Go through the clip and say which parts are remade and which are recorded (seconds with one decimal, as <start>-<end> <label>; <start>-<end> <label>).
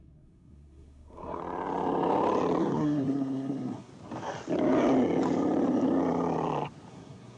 0.0-1.4 remade; 1.4-2.6 recorded; 2.6-3.9 remade; 3.9-6.9 recorded; 6.9-7.4 remade